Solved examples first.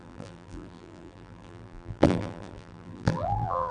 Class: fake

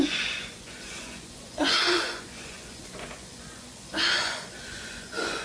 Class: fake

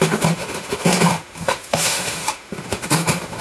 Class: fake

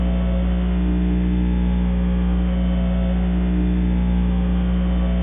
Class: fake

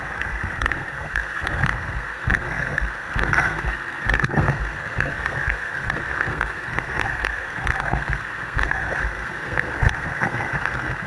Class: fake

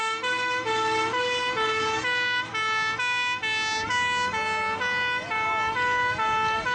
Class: real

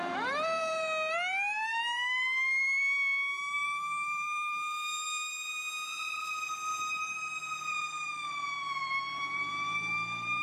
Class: fake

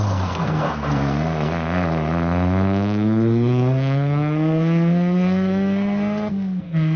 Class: fake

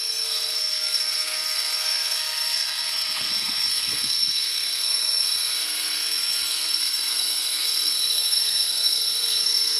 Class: fake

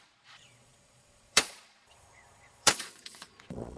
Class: fake